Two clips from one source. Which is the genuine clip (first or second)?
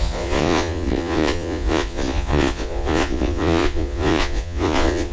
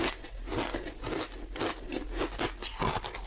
second